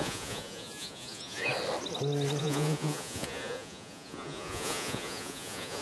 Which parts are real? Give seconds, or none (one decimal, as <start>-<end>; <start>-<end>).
1.5-2.4